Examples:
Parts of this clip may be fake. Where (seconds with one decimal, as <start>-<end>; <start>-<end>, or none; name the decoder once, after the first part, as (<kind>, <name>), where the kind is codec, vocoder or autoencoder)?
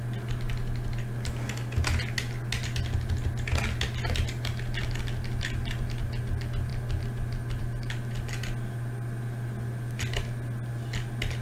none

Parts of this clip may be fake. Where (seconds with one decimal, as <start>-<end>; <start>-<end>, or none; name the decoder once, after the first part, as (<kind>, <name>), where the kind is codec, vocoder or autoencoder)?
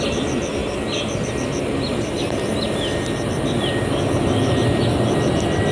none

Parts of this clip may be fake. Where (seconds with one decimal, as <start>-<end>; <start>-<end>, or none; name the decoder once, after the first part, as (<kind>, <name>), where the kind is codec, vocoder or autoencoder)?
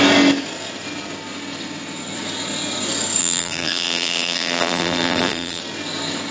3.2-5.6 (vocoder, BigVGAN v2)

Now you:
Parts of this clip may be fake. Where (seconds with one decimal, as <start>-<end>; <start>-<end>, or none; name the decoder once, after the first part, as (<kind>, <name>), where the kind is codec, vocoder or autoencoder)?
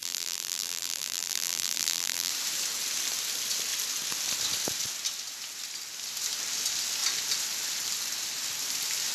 0.0-2.3 (vocoder, BigVGAN v2)